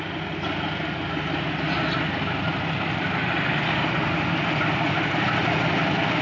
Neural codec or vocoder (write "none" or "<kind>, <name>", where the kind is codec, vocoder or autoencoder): none